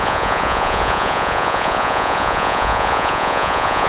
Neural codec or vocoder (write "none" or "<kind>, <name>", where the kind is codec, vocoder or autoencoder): vocoder, Vocos